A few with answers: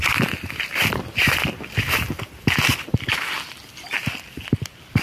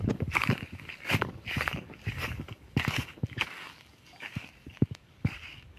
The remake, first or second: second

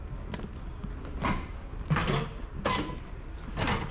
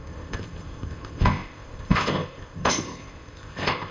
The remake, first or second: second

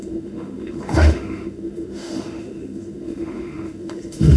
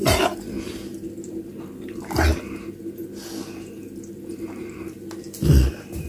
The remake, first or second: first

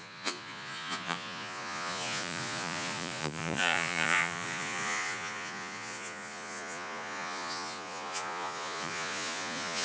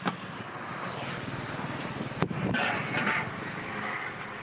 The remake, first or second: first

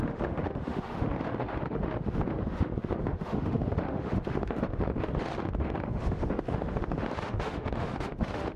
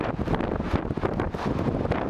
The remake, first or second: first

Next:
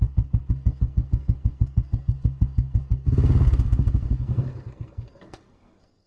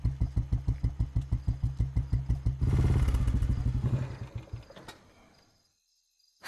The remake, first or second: first